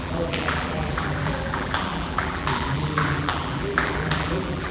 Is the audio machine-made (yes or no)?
yes